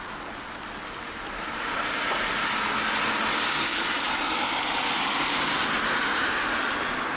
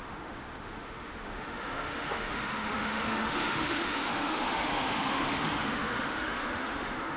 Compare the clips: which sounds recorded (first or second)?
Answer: first